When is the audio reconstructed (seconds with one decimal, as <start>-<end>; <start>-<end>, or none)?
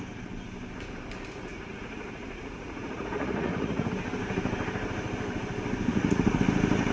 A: 1.5-3.9; 5.9-6.4